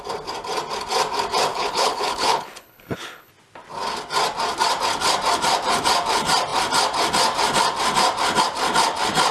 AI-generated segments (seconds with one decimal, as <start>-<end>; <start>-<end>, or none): 1.5-3.3